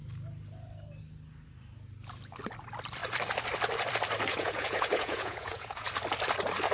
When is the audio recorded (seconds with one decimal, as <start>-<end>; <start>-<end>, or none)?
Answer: 0.0-4.3; 5.9-6.7